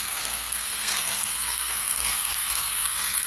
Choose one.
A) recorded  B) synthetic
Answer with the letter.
B